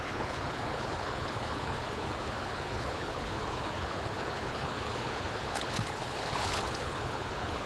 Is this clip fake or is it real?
fake